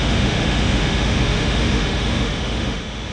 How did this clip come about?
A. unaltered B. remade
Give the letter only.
B